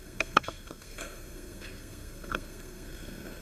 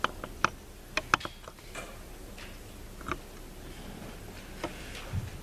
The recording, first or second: second